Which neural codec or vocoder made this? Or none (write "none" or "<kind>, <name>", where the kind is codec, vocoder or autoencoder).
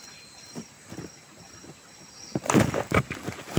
none